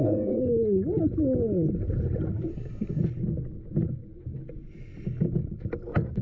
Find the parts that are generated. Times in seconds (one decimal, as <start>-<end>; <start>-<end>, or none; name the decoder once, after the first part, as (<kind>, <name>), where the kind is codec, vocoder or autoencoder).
0.0-0.4 (codec, SNAC); 2.5-3.0